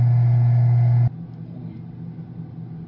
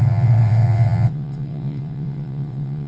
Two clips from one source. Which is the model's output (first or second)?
second